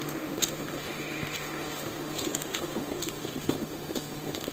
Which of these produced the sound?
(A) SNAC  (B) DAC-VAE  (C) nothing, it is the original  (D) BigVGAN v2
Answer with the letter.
B